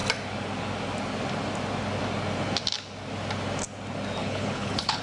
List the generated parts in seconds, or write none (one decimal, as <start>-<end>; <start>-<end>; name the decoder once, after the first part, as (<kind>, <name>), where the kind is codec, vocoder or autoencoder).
4.2-5.0 (codec, HILCodec)